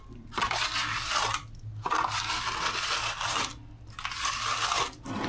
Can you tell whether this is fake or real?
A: real